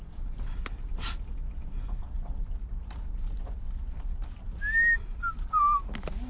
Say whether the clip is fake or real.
real